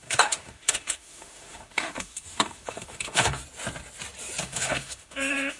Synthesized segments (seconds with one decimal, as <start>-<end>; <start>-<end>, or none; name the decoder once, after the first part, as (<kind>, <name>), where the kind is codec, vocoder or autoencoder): 0.0-3.4 (autoencoder, DAC-VAE); 4.4-5.6